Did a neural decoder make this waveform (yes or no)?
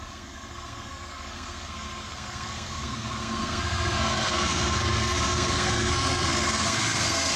yes